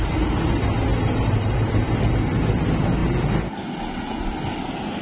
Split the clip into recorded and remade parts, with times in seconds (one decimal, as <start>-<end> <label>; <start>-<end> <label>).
0.0-0.9 recorded; 0.9-2.1 remade; 2.1-5.0 recorded